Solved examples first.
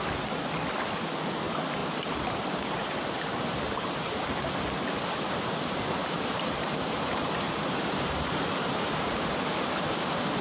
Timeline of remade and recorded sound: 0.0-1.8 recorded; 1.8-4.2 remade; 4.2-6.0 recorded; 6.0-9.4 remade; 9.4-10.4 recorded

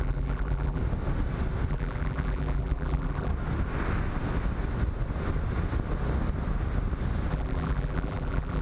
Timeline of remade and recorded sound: 0.0-0.8 remade; 0.8-1.7 recorded; 1.7-3.3 remade; 3.3-7.3 recorded; 7.3-8.6 remade

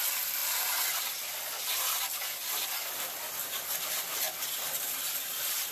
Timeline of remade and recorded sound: 0.0-5.7 recorded